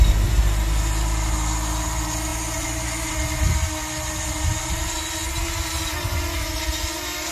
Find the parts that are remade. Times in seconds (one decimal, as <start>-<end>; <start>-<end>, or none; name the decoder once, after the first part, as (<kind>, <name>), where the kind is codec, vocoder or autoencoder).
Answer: none